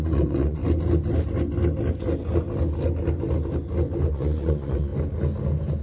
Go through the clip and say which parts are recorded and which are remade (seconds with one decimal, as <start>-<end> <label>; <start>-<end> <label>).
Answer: 0.0-0.6 remade; 0.6-4.1 recorded; 4.1-4.9 remade; 4.9-5.8 recorded